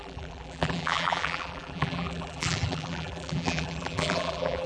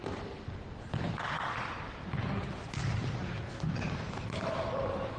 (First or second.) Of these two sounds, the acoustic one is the second